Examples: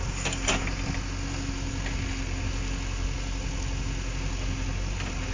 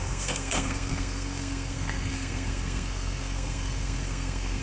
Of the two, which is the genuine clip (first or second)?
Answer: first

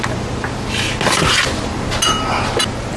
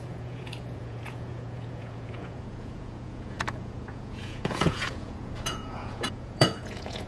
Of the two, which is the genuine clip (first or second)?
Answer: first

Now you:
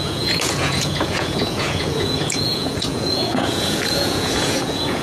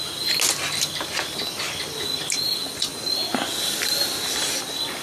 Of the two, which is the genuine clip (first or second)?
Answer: second